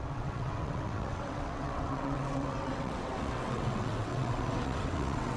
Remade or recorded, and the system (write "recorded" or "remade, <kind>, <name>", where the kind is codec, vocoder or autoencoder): remade, vocoder, WaveNeXt